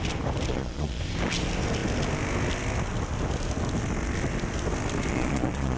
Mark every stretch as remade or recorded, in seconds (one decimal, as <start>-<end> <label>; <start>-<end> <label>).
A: 0.0-0.5 recorded; 0.5-1.0 remade; 1.0-5.1 recorded; 5.1-5.8 remade